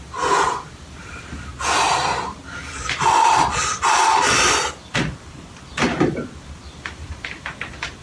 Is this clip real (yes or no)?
no